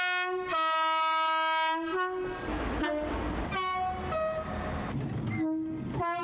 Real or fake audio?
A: real